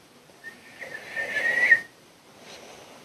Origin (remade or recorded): remade